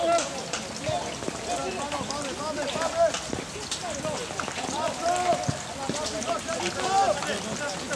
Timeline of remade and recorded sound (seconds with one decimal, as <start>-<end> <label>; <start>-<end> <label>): 0.0-8.0 recorded